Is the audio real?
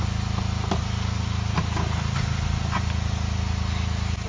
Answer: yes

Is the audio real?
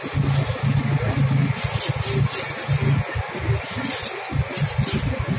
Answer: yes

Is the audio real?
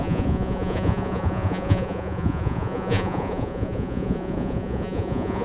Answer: no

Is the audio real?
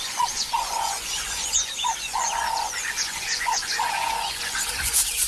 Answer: no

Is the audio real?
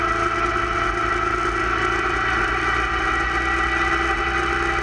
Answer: yes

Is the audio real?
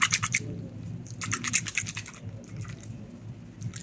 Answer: yes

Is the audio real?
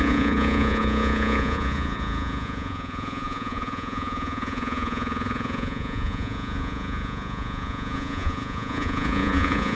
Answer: no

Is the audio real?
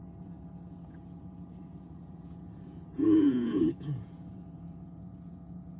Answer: no